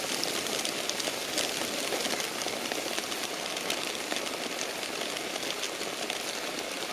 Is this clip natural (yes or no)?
yes